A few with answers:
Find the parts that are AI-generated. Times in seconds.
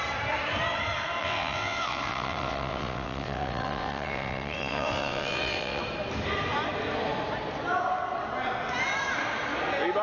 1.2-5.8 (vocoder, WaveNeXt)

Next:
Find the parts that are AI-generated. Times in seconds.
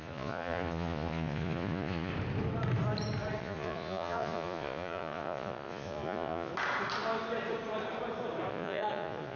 0.0-2.1 (vocoder, Vocos); 3.4-6.5; 8.5-9.4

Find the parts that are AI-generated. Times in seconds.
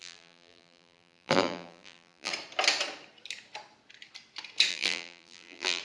0.0-2.3 (vocoder, BigVGAN v2); 4.7-5.8